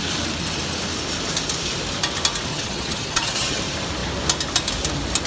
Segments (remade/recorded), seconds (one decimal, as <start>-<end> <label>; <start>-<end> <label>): 0.0-2.5 recorded; 2.5-3.6 remade; 3.6-5.3 recorded